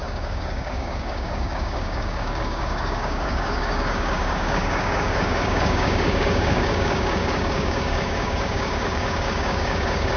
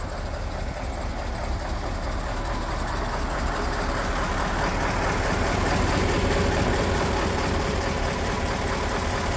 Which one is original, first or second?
second